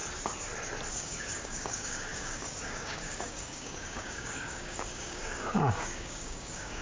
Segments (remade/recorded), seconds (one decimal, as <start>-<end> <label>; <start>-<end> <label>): 0.0-0.9 recorded; 0.9-6.8 remade